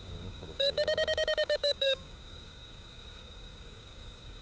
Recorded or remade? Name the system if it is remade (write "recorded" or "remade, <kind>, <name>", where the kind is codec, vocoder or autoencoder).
remade, codec, DAC